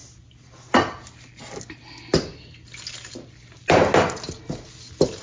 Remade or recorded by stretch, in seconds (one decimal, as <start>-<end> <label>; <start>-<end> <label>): 0.0-5.2 recorded